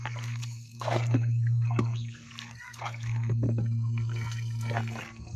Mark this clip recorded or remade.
remade